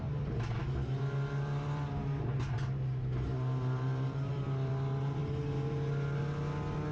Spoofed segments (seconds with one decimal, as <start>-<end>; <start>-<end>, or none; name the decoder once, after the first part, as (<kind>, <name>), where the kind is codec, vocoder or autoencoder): none